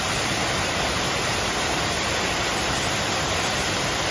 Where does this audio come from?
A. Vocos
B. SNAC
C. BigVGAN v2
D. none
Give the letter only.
C